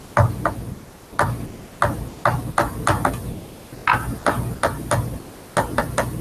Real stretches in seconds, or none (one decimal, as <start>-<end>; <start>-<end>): 0.0-6.2